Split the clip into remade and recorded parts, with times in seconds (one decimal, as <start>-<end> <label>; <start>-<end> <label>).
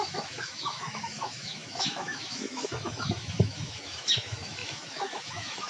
0.0-5.7 remade